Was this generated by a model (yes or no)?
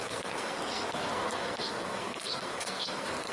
yes